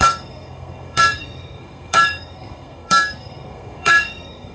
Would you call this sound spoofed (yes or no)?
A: yes